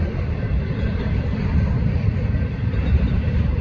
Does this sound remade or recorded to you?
remade